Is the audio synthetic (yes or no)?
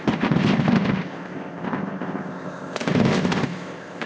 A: yes